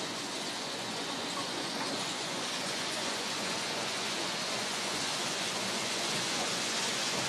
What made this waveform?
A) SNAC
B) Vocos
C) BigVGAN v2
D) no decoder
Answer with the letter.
B